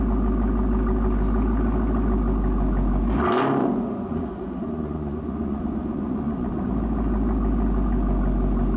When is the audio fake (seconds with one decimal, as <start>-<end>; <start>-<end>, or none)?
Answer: 3.6-6.7